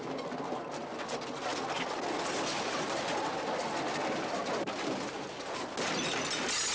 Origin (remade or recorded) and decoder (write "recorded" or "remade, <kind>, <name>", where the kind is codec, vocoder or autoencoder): recorded